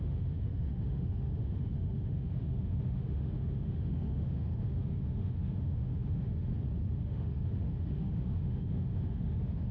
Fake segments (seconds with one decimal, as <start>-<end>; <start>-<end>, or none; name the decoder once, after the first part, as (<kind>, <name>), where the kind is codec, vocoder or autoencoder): 0.0-6.5 (autoencoder, DAC-VAE); 7.0-9.7